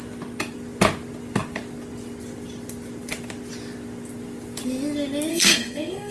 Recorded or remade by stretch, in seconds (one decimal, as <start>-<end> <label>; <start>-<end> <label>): 0.0-5.3 recorded; 5.3-6.1 remade